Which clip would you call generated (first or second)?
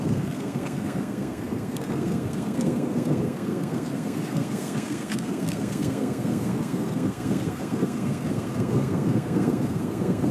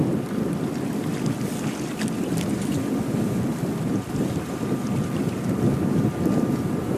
first